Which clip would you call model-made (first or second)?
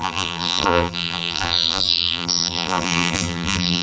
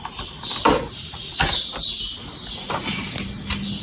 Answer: first